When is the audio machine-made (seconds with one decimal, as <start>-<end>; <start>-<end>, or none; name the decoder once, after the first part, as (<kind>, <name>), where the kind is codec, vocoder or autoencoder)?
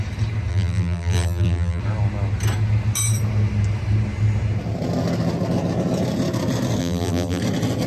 0.5-1.8 (vocoder, BigVGAN v2); 6.8-7.4